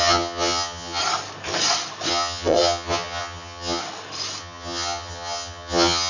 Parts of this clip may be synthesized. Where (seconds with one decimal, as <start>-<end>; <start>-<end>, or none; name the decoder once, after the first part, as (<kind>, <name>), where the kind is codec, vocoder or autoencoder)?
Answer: 0.0-1.0 (vocoder, HiFi-GAN); 2.1-3.8; 4.4-6.1